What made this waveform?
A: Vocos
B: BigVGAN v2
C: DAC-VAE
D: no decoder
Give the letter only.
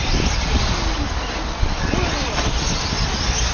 D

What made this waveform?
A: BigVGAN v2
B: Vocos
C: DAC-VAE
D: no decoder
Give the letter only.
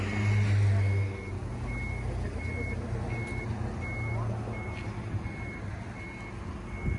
D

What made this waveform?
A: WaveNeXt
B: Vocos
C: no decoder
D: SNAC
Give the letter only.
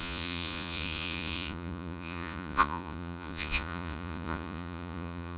B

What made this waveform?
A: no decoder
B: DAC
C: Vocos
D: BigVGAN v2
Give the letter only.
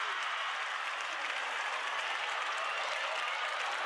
A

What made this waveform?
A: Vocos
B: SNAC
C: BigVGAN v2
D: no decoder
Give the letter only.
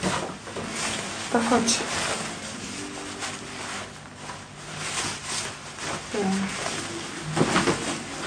D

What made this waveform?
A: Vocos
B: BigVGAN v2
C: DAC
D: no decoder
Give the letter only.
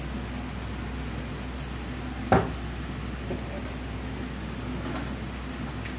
D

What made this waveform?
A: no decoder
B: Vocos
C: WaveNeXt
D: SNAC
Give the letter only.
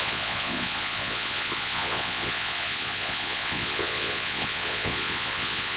B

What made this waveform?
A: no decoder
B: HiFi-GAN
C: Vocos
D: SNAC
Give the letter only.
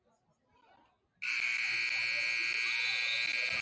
A